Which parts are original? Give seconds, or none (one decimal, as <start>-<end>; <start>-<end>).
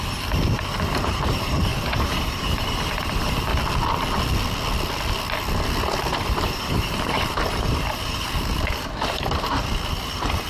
3.5-6.1